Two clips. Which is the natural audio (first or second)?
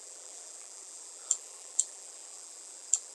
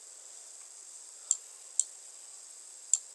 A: second